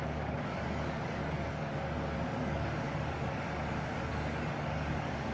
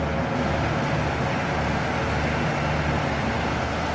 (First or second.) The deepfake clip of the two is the first